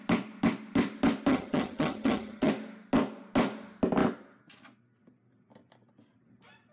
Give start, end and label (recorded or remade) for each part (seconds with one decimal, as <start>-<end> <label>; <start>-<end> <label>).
0.0-1.3 recorded; 1.3-2.5 remade; 2.5-6.7 recorded